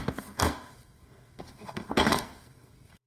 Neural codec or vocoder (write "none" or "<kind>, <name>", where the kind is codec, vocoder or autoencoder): codec, SNAC